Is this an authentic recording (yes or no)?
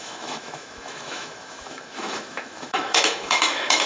no